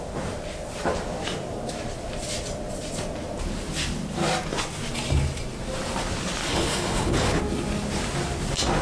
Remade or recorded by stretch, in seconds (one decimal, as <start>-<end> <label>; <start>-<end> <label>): 0.0-6.4 recorded; 6.4-7.4 remade; 7.4-8.8 recorded